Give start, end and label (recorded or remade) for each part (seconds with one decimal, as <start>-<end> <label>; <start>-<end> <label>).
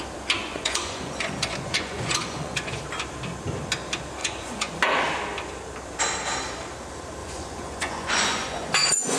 0.0-0.4 recorded; 0.4-2.8 remade; 2.8-4.2 recorded; 4.2-4.8 remade; 4.8-7.2 recorded; 7.2-9.2 remade